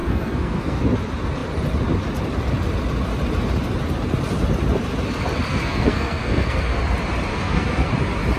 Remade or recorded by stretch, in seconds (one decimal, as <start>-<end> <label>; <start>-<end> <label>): 0.0-0.8 remade; 0.8-5.5 recorded; 5.5-6.8 remade; 6.8-7.3 recorded; 7.3-7.9 remade; 7.9-8.4 recorded